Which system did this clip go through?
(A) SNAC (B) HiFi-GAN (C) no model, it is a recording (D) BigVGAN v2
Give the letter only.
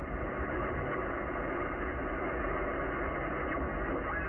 C